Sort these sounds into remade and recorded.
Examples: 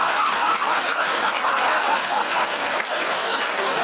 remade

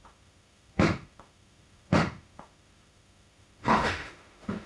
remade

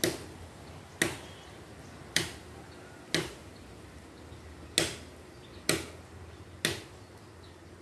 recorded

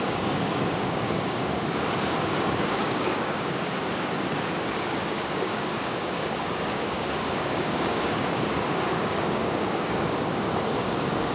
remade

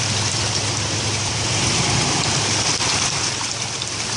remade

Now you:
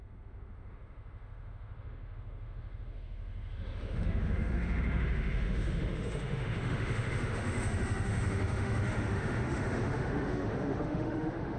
remade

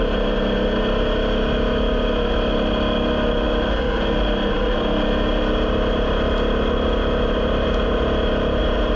recorded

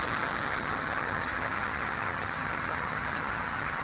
remade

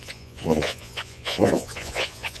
remade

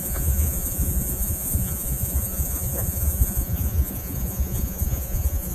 remade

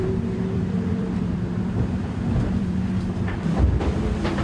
remade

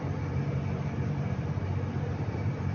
remade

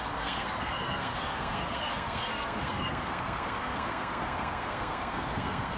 remade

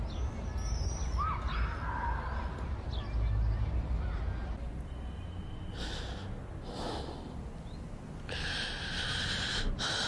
recorded